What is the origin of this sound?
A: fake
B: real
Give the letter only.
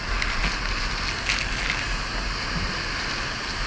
B